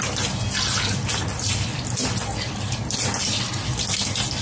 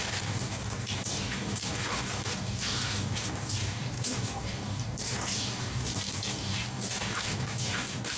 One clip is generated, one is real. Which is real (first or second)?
first